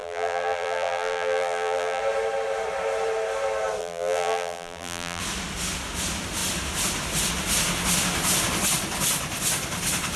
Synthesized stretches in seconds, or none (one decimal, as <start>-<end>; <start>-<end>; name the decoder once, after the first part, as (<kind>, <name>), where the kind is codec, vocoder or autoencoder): 0.0-2.0 (vocoder, BigVGAN v2); 3.8-5.2